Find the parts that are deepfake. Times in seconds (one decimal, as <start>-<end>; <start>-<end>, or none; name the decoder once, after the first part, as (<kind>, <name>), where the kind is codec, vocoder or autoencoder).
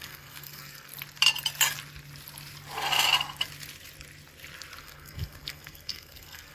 0.0-0.9 (codec, SNAC); 4.8-6.5